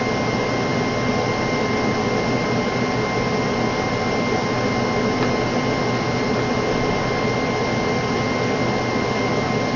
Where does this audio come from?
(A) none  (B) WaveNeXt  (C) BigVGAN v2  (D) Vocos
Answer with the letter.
A